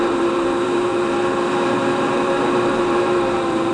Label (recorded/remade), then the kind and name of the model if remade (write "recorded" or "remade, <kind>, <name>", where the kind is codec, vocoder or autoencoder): remade, vocoder, BigVGAN v2